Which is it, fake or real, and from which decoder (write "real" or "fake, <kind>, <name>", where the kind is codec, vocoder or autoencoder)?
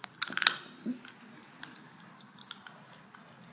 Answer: real